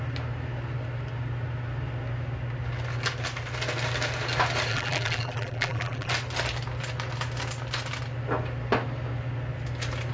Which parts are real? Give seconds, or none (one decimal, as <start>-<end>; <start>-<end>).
0.0-4.7; 6.1-10.1